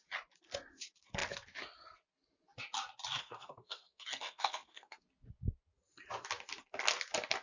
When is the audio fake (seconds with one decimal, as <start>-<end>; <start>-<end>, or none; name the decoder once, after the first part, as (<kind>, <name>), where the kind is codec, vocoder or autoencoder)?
3.2-5.0 (codec, SNAC)